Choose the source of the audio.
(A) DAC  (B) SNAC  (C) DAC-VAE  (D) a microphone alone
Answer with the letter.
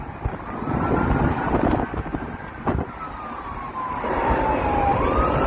D